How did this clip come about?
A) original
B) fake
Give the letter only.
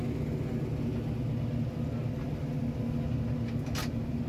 A